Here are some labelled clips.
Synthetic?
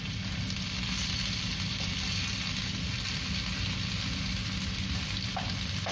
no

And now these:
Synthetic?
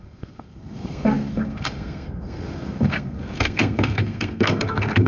yes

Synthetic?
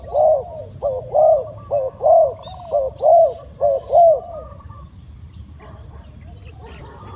no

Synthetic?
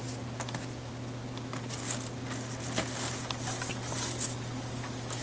no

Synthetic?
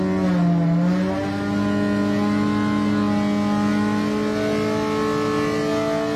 no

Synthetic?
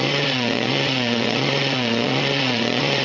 yes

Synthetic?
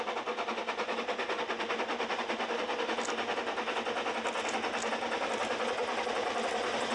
no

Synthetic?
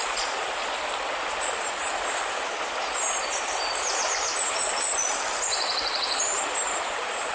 yes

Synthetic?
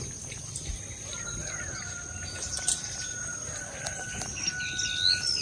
no